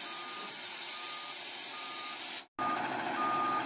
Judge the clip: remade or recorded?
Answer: recorded